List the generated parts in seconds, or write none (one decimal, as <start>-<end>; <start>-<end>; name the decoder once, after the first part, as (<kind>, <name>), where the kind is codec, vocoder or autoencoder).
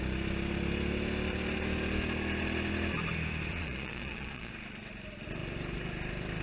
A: 3.5-4.5 (vocoder, Vocos)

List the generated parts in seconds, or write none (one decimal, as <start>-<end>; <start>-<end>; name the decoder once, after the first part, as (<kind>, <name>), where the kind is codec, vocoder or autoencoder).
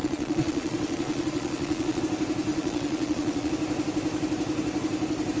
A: 0.0-2.0 (vocoder, Vocos); 2.5-3.5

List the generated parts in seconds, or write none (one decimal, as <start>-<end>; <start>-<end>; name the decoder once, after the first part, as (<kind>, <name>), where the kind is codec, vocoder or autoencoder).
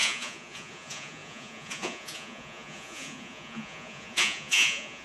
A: 0.0-5.0 (vocoder, Vocos)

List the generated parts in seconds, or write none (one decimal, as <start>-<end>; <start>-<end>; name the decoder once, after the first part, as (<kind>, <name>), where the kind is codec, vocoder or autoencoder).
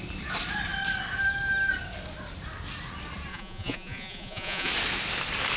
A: 3.3-4.7 (vocoder, Vocos)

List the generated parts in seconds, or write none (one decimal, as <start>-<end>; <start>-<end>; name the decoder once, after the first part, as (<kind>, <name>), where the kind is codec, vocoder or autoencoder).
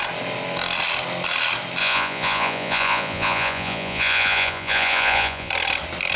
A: 1.8-5.5 (vocoder, Vocos)